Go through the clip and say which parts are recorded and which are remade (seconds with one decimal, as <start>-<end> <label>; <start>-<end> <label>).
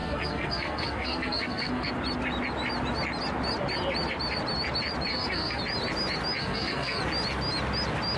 0.0-1.9 remade; 1.9-5.1 recorded; 5.1-5.6 remade; 5.6-6.4 recorded; 6.4-7.0 remade; 7.0-8.2 recorded